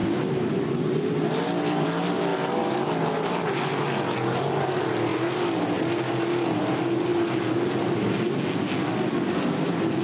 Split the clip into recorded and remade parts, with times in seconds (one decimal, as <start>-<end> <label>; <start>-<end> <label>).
0.0-10.0 recorded